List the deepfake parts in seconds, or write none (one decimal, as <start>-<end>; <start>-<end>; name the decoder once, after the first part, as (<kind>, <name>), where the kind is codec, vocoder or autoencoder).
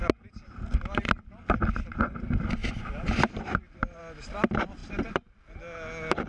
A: 2.6-4.0 (vocoder, BigVGAN v2); 4.8-5.4